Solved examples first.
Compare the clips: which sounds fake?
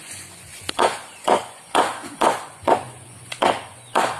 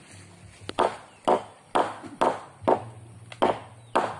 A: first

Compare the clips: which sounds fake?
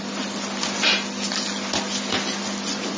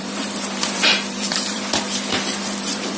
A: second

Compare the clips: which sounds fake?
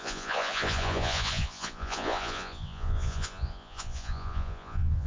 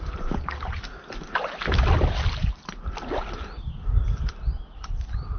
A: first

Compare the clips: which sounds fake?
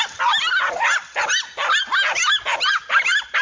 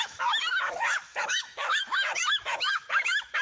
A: second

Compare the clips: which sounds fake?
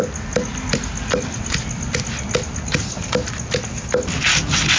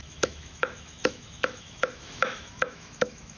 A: second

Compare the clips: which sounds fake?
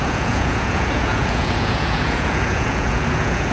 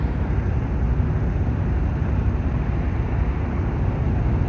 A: first